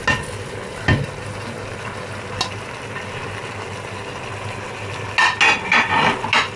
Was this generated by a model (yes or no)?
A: no